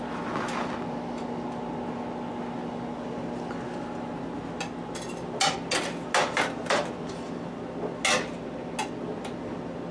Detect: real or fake real